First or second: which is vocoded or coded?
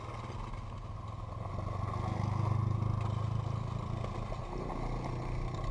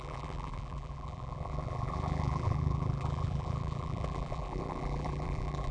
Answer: second